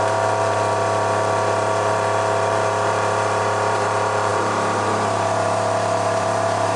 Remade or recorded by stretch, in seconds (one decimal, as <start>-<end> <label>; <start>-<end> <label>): 0.0-6.8 remade